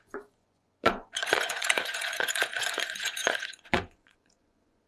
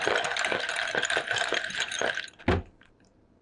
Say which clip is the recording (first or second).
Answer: second